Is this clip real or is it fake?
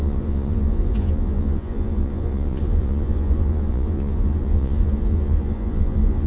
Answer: fake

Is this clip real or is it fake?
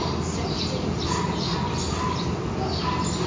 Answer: real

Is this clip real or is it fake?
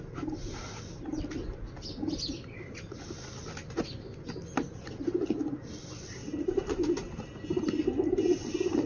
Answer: real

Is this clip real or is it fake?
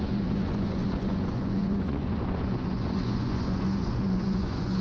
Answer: fake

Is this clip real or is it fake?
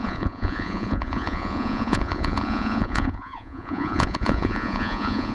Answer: fake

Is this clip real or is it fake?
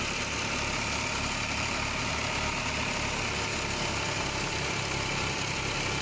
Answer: real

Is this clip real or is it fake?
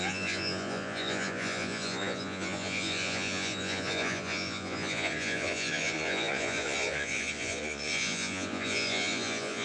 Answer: fake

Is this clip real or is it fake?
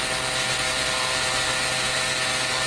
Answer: real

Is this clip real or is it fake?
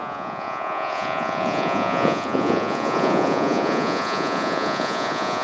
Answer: fake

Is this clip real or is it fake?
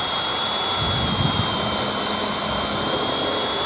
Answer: real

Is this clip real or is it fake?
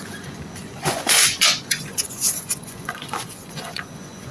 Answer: fake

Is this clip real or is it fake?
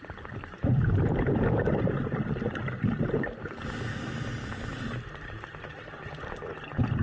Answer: real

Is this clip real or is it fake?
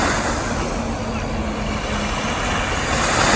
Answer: real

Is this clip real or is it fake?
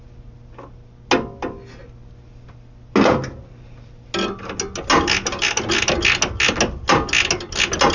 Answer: real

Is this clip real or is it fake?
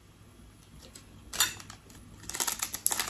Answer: real